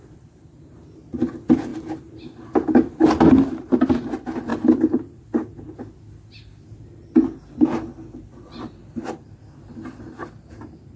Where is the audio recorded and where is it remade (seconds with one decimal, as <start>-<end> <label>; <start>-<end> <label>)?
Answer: 0.0-11.0 recorded